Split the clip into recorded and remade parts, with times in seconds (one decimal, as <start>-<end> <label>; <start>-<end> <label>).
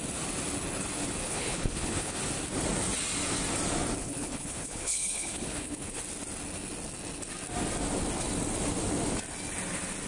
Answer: 0.0-1.2 recorded; 1.2-2.2 remade; 2.2-4.0 recorded; 4.0-6.0 remade; 6.0-10.1 recorded